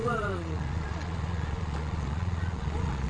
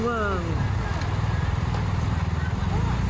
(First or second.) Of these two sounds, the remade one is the first